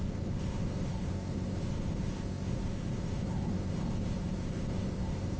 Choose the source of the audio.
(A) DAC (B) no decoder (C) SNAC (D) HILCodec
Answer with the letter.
C